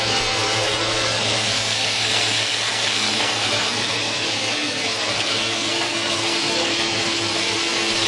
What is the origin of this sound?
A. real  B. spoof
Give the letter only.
B